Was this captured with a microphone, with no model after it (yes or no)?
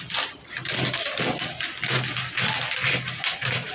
yes